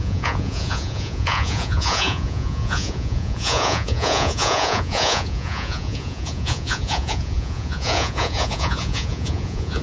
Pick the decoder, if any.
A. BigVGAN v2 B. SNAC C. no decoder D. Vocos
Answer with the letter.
D